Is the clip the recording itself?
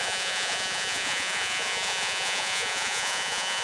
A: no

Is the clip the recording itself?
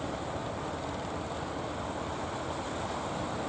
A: yes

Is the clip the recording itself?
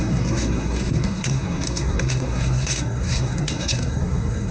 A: no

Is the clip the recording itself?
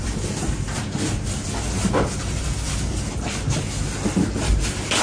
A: yes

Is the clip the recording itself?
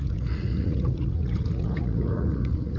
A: no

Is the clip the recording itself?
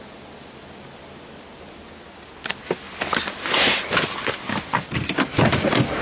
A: yes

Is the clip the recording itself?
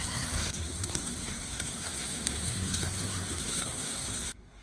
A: no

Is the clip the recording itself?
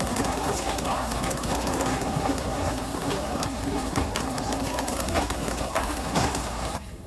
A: no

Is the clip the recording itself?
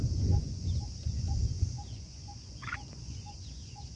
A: no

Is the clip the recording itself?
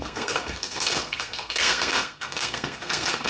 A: no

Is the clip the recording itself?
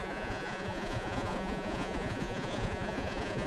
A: no